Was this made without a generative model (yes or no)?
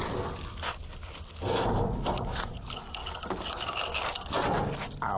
yes